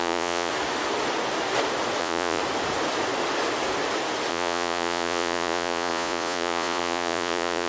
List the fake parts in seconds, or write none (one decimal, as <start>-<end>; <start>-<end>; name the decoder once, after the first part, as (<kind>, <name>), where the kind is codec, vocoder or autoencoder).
0.0-0.5 (vocoder, Vocos); 2.0-2.4; 4.3-7.7